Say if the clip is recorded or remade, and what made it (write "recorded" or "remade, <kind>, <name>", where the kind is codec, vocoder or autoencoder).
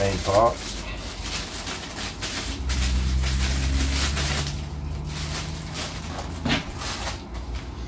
recorded